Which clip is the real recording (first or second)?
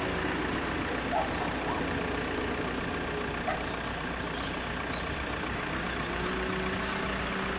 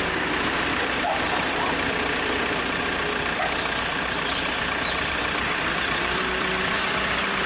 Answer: first